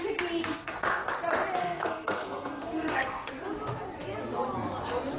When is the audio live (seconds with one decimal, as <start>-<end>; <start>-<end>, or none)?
0.0-0.4; 1.1-1.6; 3.3-5.2